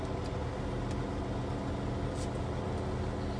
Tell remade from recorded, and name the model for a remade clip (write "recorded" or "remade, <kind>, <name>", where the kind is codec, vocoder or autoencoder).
recorded